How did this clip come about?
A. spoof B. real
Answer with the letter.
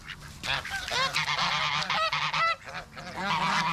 B